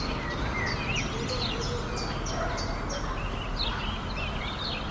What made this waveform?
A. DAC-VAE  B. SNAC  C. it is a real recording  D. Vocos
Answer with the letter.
C